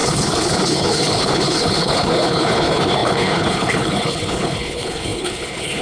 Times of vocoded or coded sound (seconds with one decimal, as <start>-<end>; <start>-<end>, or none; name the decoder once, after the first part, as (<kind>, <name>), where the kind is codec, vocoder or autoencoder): 0.0-5.8 (codec, HILCodec)